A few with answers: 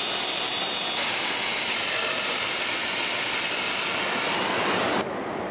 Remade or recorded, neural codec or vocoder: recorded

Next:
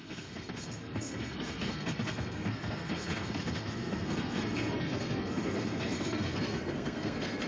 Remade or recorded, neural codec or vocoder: remade, codec, SNAC